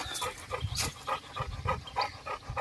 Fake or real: fake